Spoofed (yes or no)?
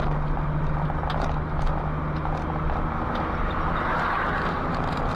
no